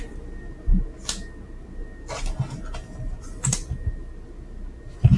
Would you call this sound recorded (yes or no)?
yes